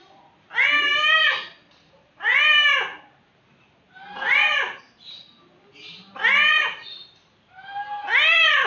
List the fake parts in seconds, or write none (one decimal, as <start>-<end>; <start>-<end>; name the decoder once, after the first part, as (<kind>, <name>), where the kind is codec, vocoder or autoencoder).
none